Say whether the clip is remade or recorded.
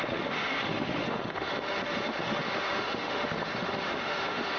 remade